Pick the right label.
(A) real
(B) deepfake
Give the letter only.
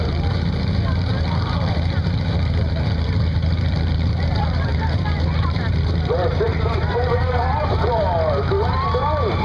B